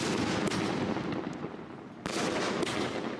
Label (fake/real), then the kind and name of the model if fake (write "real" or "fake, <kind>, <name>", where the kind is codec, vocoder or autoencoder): real